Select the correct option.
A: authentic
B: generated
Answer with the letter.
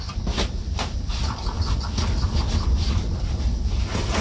A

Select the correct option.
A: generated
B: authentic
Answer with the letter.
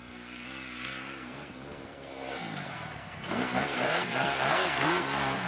A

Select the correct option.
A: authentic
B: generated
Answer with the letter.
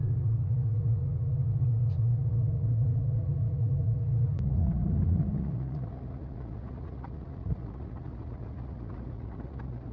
B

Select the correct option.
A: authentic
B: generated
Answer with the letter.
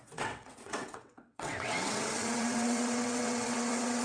B